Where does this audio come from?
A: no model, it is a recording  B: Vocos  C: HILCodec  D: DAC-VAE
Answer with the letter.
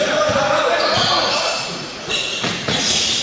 B